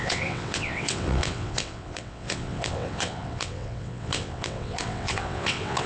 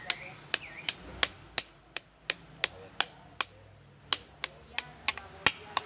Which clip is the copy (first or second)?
first